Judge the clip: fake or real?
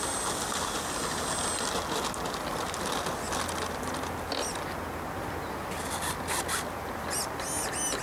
real